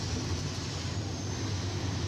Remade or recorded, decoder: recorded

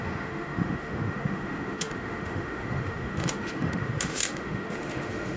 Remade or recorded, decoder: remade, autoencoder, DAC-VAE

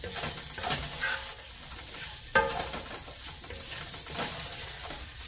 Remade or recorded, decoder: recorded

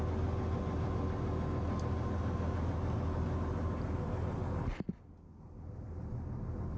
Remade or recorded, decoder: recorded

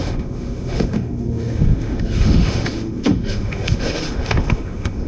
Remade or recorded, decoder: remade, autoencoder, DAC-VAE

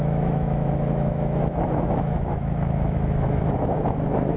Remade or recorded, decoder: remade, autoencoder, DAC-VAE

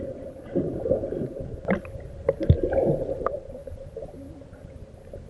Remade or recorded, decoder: recorded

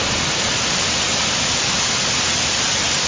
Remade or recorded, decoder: recorded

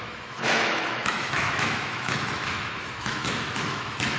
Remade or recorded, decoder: remade, autoencoder, DAC-VAE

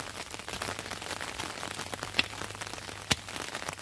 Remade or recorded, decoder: recorded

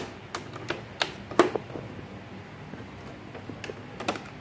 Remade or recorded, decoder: recorded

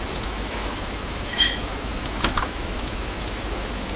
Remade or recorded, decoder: remade, autoencoder, DAC-VAE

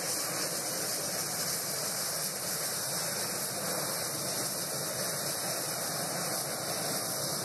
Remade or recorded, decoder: recorded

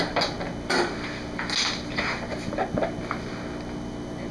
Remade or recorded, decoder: recorded